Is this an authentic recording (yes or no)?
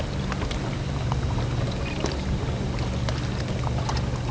yes